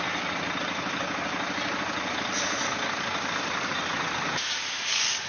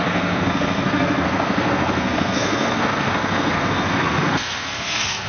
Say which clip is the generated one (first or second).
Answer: second